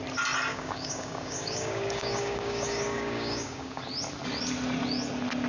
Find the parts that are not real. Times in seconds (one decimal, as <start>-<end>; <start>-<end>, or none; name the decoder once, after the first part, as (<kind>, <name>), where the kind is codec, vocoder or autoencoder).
0.5-3.8 (codec, DAC)